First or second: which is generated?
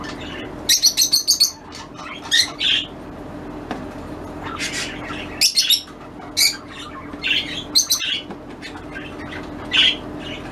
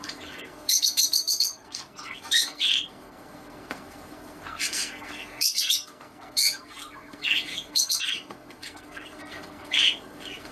second